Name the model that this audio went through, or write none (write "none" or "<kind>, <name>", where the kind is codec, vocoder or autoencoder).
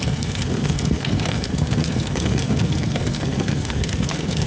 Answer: codec, SNAC